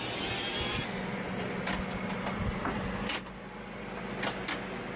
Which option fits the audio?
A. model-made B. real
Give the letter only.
B